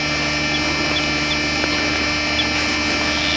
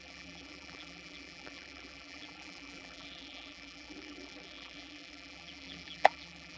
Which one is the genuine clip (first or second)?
first